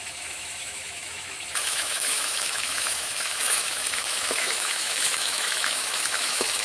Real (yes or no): no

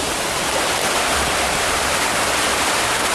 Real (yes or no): yes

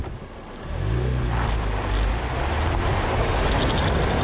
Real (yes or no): yes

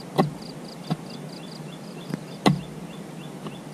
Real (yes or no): yes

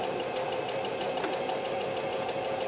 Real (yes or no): yes